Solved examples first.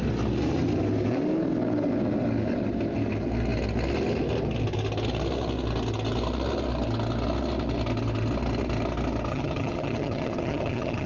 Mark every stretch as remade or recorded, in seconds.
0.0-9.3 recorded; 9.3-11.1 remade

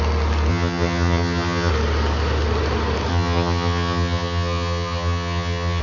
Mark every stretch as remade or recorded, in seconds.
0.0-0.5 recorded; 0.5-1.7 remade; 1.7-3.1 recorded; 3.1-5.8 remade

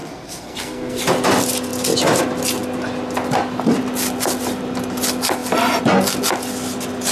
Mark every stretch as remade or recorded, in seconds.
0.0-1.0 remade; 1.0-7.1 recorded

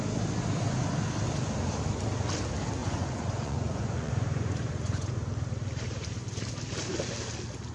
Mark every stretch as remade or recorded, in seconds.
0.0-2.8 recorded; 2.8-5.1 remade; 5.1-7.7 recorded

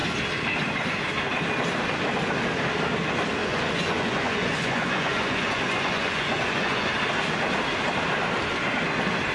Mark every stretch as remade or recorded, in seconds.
0.0-3.4 recorded; 3.4-6.9 remade; 6.9-9.3 recorded